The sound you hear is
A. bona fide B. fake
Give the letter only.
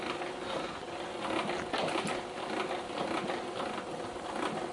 A